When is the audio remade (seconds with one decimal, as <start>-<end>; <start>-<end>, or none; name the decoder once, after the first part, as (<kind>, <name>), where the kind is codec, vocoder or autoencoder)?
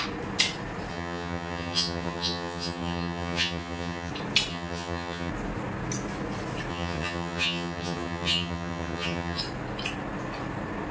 0.9-4.1 (vocoder, HiFi-GAN); 4.5-5.3; 6.7-9.4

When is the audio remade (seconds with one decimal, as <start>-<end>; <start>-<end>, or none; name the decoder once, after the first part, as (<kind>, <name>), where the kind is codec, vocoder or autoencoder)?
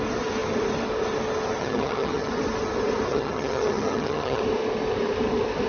1.6-2.3 (vocoder, HiFi-GAN); 3.1-4.4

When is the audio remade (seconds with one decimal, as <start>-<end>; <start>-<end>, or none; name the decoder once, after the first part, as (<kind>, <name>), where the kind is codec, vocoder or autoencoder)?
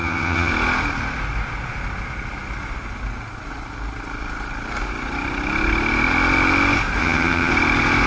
0.0-0.5 (vocoder, HiFi-GAN); 7.0-7.5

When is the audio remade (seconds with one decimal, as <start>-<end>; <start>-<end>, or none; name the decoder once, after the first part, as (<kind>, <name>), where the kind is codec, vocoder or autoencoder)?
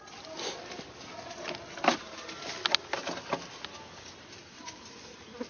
none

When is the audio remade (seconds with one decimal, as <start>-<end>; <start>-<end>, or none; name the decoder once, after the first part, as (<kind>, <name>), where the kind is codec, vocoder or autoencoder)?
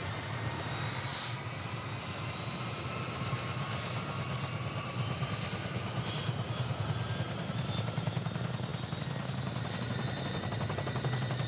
none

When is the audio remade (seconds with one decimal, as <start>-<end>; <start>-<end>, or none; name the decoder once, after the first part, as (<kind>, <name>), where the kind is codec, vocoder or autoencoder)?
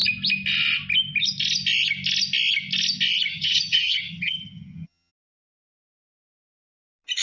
3.3-5.1 (vocoder, HiFi-GAN)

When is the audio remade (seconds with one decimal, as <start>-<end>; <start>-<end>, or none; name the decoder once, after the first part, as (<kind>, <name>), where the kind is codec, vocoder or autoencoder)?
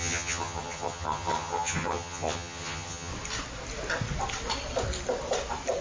0.0-3.1 (vocoder, HiFi-GAN)